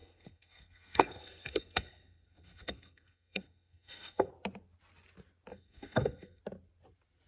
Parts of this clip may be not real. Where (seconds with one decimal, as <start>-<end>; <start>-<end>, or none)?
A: 0.0-4.3; 5.5-6.4